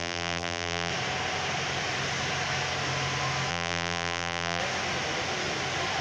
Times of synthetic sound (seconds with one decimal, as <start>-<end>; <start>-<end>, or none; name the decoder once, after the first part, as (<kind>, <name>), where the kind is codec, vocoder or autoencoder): 0.0-0.9 (vocoder, BigVGAN v2); 3.5-4.6